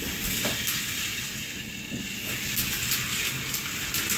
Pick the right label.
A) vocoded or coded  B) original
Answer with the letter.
B